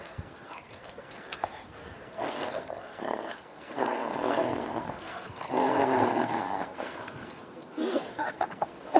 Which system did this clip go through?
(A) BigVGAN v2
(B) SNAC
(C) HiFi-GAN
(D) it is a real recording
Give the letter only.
B